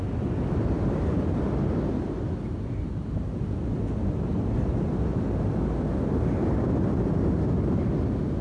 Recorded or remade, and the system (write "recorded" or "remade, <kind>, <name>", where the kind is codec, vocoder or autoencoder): recorded